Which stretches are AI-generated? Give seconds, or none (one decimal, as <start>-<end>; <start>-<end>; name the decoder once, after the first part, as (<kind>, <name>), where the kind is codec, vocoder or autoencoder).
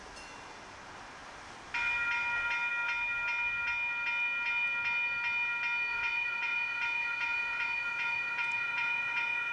5.9-9.5 (vocoder, Vocos)